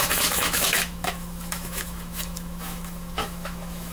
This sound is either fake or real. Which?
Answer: fake